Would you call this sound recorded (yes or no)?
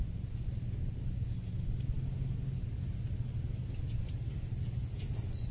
yes